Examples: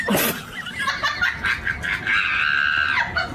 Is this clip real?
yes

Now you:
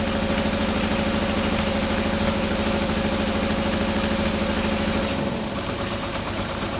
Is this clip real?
yes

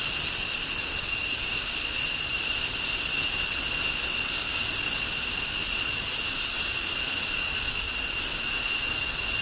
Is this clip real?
yes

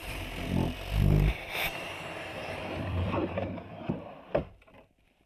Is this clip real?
no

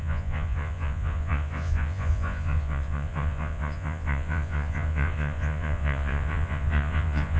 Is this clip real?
no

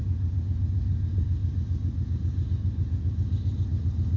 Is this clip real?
yes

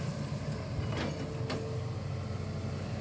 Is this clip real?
yes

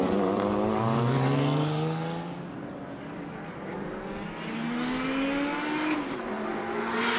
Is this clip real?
yes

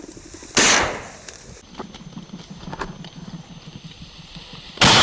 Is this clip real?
yes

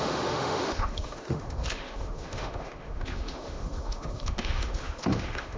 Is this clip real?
no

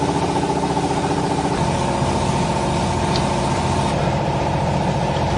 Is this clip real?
yes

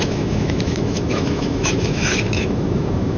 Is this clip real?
no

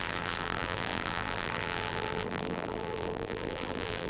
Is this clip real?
no